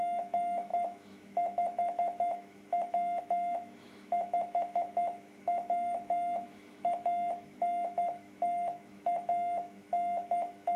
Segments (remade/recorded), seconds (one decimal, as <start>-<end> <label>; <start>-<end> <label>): 0.0-10.8 remade